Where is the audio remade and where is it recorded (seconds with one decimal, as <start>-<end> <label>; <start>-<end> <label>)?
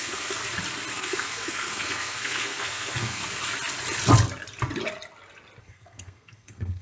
0.0-0.4 remade; 0.4-0.9 recorded; 0.9-3.2 remade; 3.2-5.6 recorded; 5.6-6.8 remade